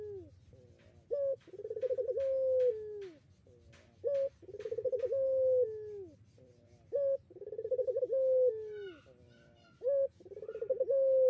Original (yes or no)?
yes